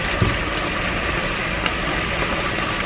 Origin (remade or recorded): recorded